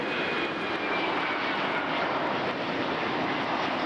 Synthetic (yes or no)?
no